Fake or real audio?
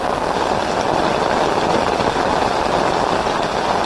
real